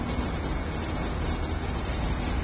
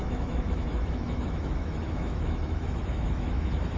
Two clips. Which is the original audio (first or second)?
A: first